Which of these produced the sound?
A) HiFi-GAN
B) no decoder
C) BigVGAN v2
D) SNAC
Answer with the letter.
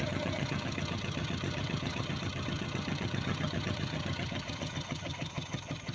A